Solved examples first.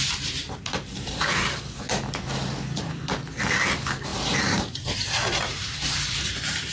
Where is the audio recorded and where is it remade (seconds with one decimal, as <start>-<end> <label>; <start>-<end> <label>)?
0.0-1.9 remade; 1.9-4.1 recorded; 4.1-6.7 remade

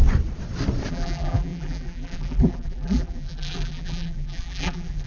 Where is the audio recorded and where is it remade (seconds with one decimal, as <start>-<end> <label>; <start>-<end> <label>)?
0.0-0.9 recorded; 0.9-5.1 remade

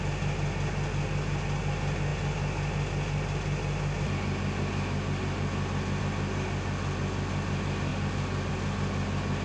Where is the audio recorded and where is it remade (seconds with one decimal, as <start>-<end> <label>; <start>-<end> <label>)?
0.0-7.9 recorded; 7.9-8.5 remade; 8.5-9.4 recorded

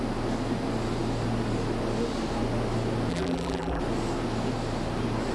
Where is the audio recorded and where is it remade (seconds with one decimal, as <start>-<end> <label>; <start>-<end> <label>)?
0.0-3.1 recorded; 3.1-3.8 remade; 3.8-5.3 recorded

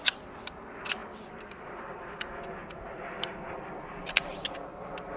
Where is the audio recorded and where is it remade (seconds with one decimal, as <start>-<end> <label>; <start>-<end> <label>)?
0.0-2.6 recorded; 2.6-4.2 remade; 4.2-5.2 recorded

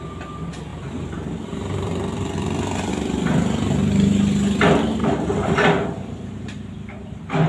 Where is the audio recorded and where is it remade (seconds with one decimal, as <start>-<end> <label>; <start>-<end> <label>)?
0.0-0.7 recorded; 0.7-2.9 remade; 2.9-5.0 recorded; 5.0-6.7 remade; 6.7-7.5 recorded